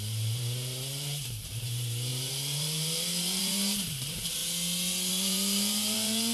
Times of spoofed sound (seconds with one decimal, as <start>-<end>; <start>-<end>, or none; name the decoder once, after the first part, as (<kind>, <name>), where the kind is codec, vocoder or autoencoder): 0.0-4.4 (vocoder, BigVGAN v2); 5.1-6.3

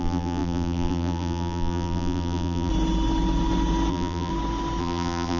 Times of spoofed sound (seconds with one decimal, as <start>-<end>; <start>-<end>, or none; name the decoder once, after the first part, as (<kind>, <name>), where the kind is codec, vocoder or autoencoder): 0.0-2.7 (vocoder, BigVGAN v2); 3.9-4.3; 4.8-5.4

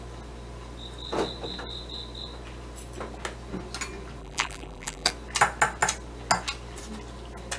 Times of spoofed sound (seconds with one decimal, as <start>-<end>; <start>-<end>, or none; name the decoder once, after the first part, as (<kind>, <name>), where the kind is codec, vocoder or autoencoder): 4.2-5.1 (vocoder, BigVGAN v2)